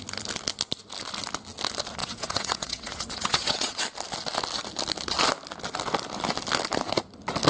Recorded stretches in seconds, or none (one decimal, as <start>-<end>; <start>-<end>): 0.0-2.0; 3.8-7.5